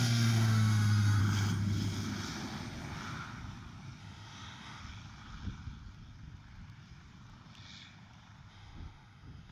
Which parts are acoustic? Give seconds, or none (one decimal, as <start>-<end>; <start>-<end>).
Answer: 1.2-4.0; 4.8-8.5